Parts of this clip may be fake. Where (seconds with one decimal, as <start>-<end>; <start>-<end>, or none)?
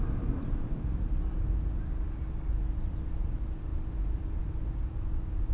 none